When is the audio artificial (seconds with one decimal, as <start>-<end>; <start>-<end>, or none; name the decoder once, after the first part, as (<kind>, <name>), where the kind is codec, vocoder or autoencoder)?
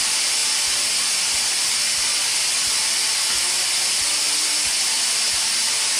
none